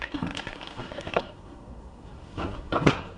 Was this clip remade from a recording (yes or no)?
yes